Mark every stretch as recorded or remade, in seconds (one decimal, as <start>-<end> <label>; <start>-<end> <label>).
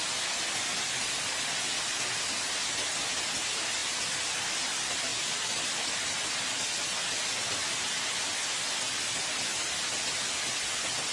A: 0.0-11.1 recorded